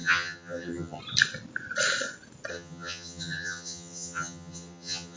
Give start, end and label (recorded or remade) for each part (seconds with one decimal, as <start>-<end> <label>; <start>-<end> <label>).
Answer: 0.0-1.0 remade; 1.0-2.5 recorded; 2.5-5.2 remade